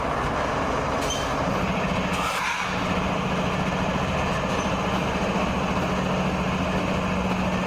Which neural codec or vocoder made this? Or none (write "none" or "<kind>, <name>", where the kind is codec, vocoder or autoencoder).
none